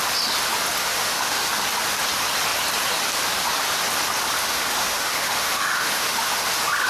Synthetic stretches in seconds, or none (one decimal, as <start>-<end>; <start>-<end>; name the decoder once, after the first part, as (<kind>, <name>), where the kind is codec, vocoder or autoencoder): 0.8-1.5 (autoencoder, DAC-VAE); 4.4-6.5